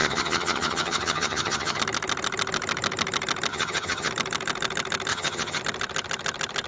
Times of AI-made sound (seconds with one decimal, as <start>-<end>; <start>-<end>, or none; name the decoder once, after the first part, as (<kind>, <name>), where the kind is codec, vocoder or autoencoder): 0.0-1.8 (vocoder, HiFi-GAN); 3.5-4.1; 5.1-5.6